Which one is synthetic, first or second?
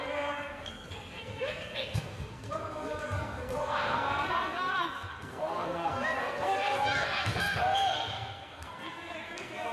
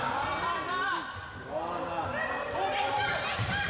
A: first